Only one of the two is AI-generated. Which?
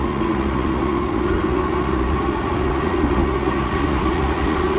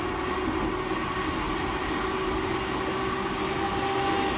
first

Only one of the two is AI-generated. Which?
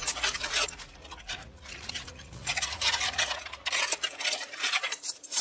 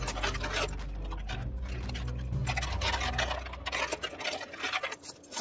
first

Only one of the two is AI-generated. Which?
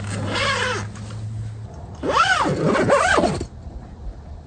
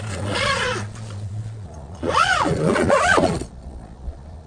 second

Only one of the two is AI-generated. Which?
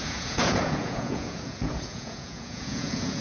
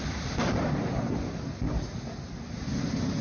first